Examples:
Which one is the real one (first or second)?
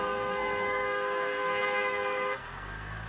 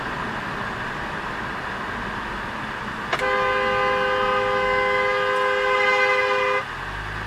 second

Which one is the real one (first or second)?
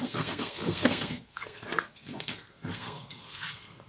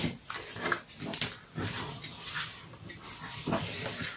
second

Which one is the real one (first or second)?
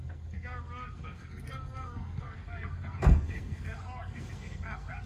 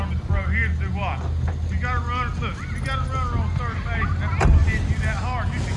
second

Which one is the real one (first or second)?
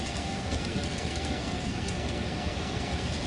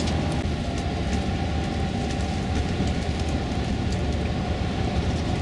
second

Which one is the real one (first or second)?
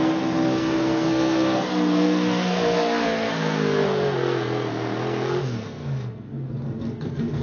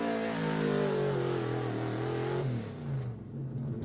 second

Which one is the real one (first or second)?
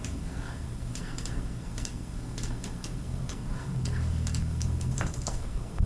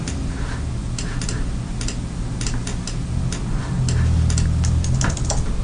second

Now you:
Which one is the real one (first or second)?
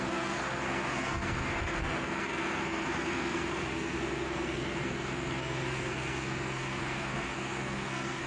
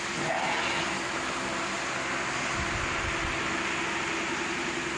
second